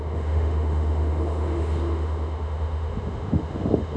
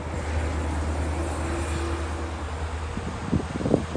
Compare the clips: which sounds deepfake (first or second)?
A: first